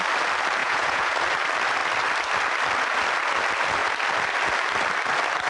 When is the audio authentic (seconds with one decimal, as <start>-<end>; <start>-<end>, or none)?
0.0-0.6; 1.1-5.5